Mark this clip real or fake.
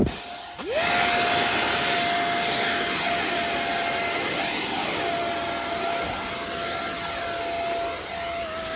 real